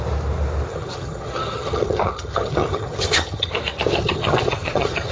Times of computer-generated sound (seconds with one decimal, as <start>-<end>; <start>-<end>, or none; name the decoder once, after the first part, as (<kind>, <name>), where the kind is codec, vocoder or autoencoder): 0.7-3.5 (vocoder, HiFi-GAN); 3.9-5.1